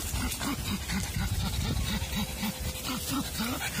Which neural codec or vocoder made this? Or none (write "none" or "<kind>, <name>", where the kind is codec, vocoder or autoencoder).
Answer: none